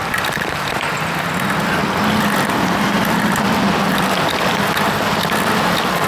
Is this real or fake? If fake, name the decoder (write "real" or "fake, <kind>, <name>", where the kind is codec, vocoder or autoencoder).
real